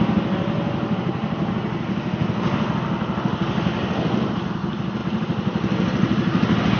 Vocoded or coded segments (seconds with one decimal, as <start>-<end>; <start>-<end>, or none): none